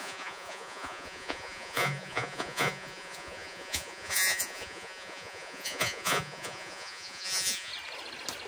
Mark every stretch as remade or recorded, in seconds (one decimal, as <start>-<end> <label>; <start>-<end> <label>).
0.0-7.7 remade; 7.7-8.5 recorded